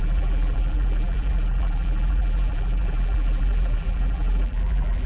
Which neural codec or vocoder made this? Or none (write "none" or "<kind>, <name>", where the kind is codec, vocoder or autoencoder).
vocoder, BigVGAN v2